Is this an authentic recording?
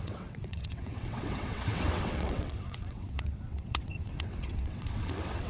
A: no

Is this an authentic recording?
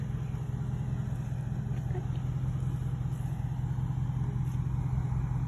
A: yes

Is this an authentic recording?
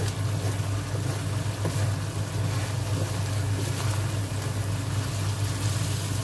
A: yes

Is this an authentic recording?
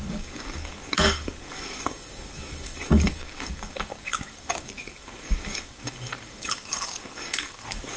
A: no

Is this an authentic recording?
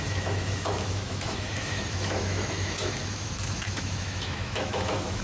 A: no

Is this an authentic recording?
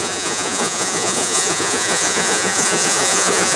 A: no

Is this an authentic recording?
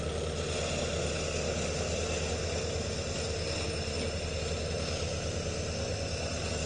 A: yes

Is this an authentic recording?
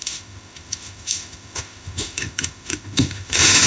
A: no